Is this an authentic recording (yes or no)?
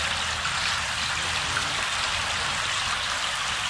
yes